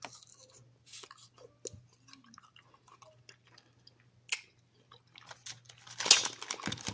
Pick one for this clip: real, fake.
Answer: real